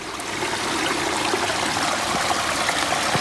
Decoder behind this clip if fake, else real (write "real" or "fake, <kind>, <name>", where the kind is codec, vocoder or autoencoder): real